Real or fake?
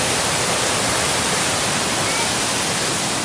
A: real